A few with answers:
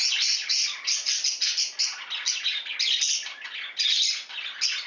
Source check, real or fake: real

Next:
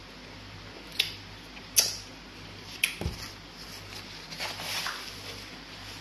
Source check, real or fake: real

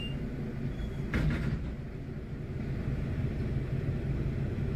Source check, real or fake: real